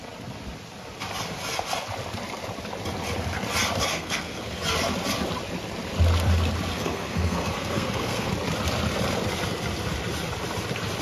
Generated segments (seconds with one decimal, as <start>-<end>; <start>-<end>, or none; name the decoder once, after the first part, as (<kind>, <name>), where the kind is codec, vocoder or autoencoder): 3.9-4.6 (codec, SNAC); 6.7-8.3